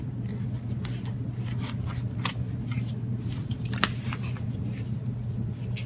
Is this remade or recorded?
recorded